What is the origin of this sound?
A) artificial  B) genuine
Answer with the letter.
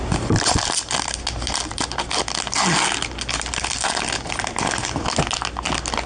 B